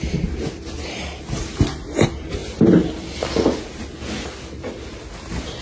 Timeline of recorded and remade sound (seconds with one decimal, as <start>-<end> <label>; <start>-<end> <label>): 0.0-5.6 recorded